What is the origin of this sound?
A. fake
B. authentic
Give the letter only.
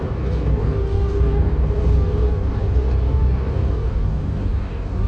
A